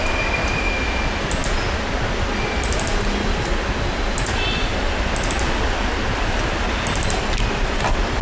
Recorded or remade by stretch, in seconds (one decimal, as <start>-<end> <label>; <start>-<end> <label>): 0.0-8.2 recorded